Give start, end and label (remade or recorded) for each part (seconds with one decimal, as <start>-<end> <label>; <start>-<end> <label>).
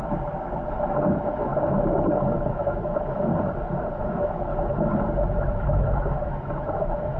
0.0-1.5 remade; 1.5-2.5 recorded; 2.5-3.3 remade; 3.3-4.0 recorded; 4.0-4.5 remade; 4.5-5.3 recorded; 5.3-7.2 remade